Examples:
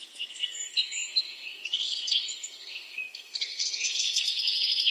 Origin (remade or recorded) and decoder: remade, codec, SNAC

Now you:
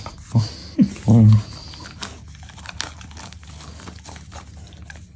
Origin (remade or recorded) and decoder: recorded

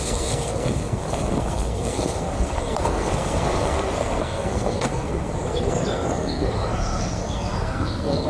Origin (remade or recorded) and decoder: remade, codec, SNAC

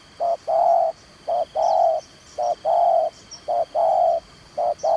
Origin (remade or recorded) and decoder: recorded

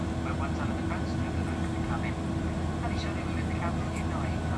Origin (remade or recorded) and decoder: recorded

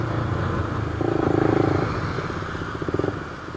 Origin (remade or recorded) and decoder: recorded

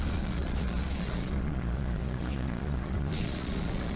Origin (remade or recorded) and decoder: remade, vocoder, Vocos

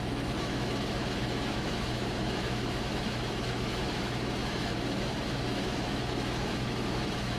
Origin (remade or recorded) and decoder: remade, autoencoder, DAC-VAE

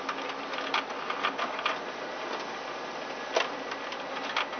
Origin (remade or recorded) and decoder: recorded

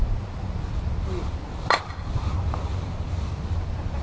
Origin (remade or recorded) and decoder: recorded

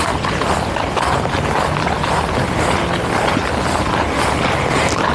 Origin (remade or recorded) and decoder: recorded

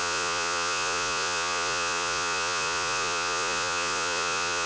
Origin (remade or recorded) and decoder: remade, vocoder, Vocos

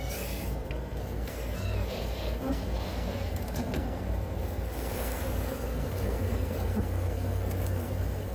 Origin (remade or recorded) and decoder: remade, codec, SNAC